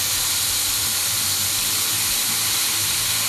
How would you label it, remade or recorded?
recorded